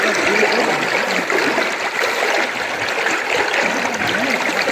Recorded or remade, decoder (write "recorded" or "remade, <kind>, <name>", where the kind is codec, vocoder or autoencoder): recorded